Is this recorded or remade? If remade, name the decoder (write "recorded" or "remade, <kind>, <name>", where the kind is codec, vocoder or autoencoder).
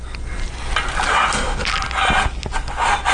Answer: recorded